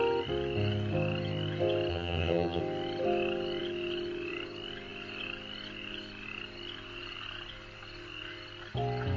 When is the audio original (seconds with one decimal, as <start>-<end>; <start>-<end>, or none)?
0.0-1.9; 2.6-9.2